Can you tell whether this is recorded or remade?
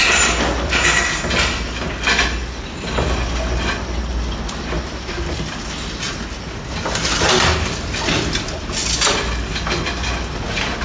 recorded